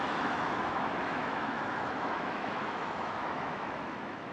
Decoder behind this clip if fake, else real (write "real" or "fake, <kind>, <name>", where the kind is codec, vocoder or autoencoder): fake, autoencoder, DAC-VAE